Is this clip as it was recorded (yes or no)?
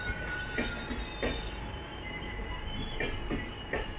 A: yes